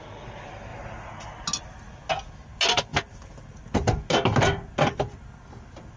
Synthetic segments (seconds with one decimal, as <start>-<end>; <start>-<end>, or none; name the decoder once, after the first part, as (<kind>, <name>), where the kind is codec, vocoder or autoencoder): none